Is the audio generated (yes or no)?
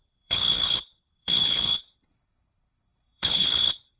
yes